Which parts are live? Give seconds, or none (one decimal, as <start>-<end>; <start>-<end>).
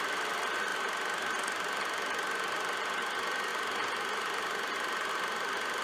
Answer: 0.0-5.8